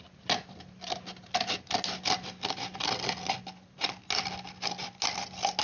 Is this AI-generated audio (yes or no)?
no